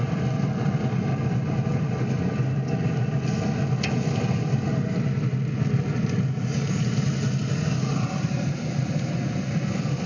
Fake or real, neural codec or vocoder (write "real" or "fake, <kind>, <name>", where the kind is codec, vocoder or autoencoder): real